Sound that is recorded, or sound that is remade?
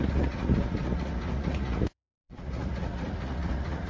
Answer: remade